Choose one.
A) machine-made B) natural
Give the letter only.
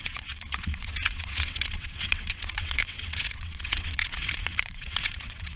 A